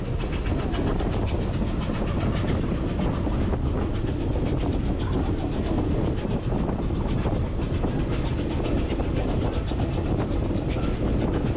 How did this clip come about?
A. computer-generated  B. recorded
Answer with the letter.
B